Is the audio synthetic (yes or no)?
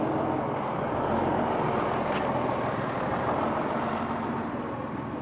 no